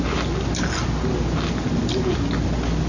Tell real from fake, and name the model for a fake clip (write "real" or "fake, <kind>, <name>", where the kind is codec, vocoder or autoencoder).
real